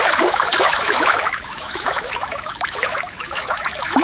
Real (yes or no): no